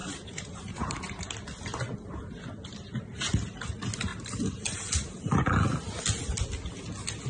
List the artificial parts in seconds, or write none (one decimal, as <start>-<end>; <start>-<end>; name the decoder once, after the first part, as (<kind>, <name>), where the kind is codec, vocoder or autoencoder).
0.0-1.3 (vocoder, BigVGAN v2); 4.1-5.4